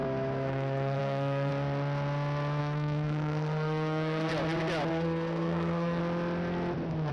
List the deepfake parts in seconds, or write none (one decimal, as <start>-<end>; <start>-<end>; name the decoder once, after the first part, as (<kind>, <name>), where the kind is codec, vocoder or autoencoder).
0.0-1.5 (codec, SNAC); 2.6-4.3; 4.9-6.0